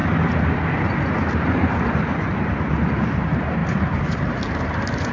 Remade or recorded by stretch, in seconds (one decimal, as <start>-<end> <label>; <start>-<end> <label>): 0.0-5.1 recorded